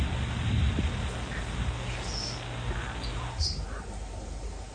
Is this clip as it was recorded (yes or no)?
yes